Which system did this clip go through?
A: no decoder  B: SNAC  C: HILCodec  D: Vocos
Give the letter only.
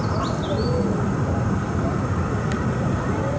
A